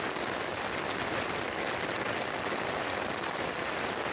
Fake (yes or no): no